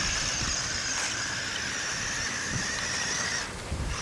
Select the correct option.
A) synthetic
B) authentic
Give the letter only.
B